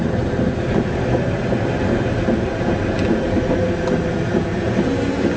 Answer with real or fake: real